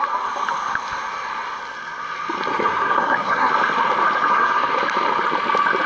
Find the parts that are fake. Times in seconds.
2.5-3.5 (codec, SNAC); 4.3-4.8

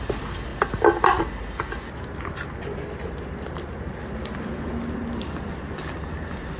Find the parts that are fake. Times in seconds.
none

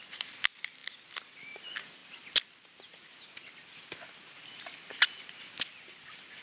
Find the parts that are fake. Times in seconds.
none

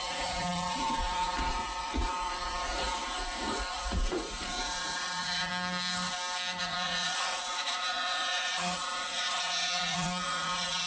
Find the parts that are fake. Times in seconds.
0.0-5.5 (vocoder, Vocos); 6.6-10.9

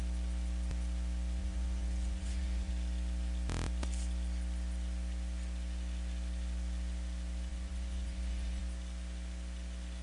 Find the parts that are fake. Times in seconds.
1.4-2.7 (vocoder, Vocos); 7.5-8.6

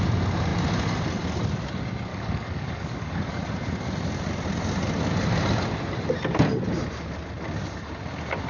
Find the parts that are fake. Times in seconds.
2.1-3.4 (codec, DAC)

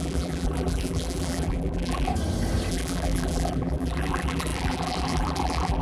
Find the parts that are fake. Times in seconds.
0.0-2.1 (vocoder, BigVGAN v2); 2.7-5.8

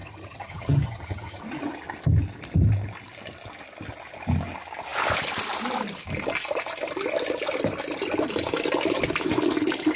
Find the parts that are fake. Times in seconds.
0.0-1.4 (vocoder, HiFi-GAN)